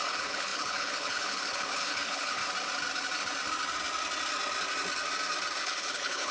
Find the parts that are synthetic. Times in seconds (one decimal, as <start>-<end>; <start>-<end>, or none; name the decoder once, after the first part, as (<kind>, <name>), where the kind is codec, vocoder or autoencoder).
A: 0.0-2.4 (codec, HILCodec); 5.6-6.3